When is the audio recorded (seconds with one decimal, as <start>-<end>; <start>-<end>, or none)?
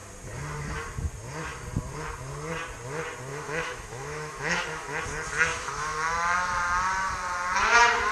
0.0-3.3; 5.0-5.5; 6.6-8.1